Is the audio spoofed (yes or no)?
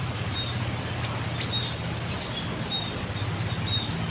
no